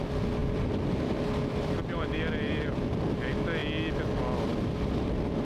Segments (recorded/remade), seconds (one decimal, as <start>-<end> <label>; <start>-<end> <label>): 0.0-0.4 recorded; 0.4-3.0 remade; 3.0-4.5 recorded; 4.5-5.4 remade